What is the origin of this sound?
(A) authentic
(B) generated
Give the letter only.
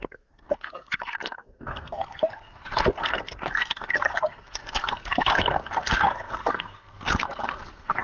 B